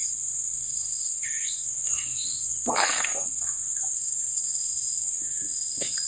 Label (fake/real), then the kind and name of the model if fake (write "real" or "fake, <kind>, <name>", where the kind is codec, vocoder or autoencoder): fake, codec, SNAC